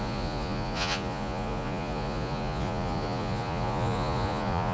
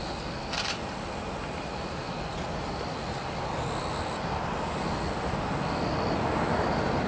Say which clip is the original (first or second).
second